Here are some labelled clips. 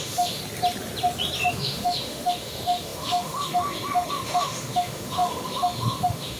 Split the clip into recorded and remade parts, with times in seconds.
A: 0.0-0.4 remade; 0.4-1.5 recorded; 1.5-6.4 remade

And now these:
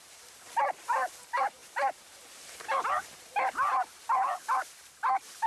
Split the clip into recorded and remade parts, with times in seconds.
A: 0.0-5.5 remade

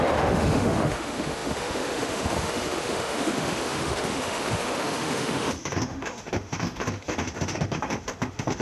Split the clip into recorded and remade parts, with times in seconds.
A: 0.0-8.6 remade

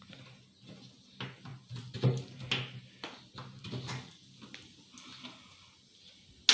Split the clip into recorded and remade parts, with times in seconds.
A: 0.0-6.5 recorded